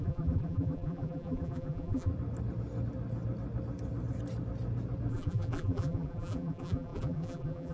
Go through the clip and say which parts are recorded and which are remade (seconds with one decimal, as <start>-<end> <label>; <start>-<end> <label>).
0.0-2.1 remade; 2.1-5.1 recorded; 5.1-7.7 remade